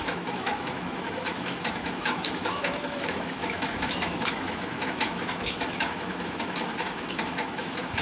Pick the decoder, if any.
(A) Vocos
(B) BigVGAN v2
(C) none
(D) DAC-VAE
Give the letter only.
D